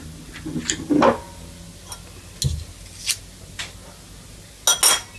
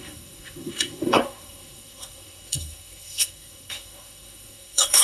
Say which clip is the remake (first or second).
second